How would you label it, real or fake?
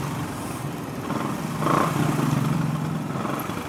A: fake